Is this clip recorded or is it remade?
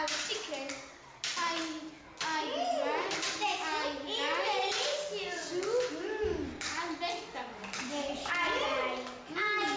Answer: recorded